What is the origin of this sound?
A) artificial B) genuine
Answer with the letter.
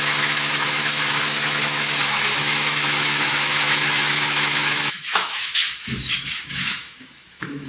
A